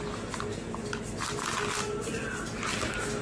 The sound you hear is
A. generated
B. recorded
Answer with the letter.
B